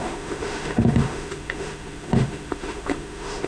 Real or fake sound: fake